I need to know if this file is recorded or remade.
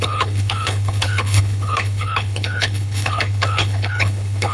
remade